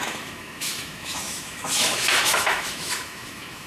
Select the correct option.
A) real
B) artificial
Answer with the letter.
B